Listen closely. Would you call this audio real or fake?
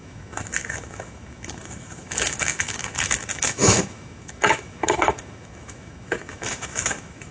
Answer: fake